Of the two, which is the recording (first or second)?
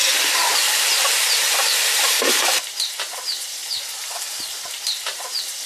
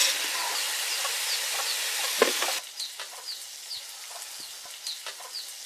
second